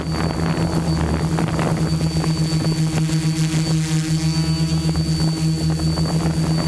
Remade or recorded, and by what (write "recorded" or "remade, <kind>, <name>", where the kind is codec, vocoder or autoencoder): recorded